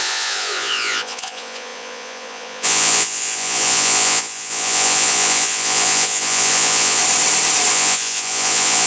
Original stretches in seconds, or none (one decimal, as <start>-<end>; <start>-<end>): 7.0-7.7